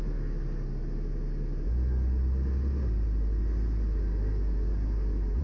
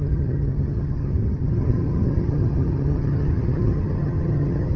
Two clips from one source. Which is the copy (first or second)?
second